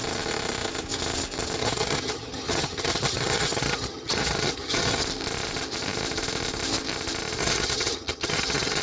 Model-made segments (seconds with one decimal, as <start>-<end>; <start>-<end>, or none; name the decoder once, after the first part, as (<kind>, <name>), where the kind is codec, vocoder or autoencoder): 1.6-5.0 (vocoder, HiFi-GAN); 7.4-8.8